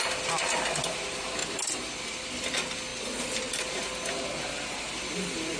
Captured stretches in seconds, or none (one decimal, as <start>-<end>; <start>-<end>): 0.0-5.6